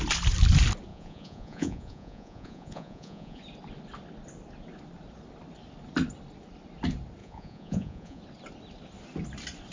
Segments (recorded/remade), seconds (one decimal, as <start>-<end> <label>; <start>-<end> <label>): 0.0-0.9 recorded; 0.9-3.4 remade; 3.4-7.2 recorded; 7.2-8.2 remade; 8.2-9.7 recorded

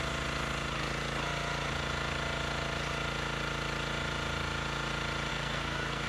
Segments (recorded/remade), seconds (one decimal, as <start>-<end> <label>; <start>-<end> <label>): 0.0-5.3 recorded; 5.3-6.1 remade

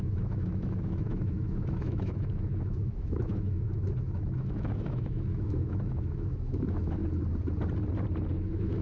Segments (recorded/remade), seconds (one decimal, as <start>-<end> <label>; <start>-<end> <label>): 0.0-7.0 remade; 7.0-8.3 recorded; 8.3-8.8 remade

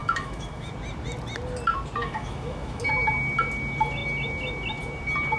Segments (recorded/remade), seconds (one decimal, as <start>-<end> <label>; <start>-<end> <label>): 0.0-0.7 remade; 0.7-2.0 recorded; 2.0-2.9 remade; 2.9-5.4 recorded

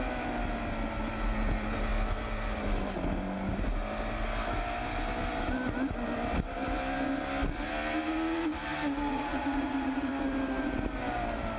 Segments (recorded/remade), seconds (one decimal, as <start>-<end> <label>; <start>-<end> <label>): 0.0-9.1 recorded; 9.1-10.1 remade; 10.1-11.6 recorded

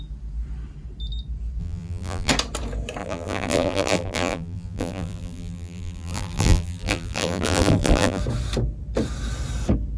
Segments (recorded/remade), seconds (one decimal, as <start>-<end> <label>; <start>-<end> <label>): 0.0-1.6 recorded; 1.6-2.3 remade; 2.3-3.0 recorded; 3.0-8.2 remade; 8.2-10.0 recorded

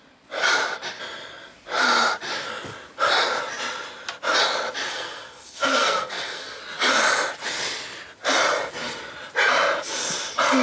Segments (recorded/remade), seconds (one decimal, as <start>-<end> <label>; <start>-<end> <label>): 0.0-4.9 recorded; 4.9-6.6 remade; 6.6-10.6 recorded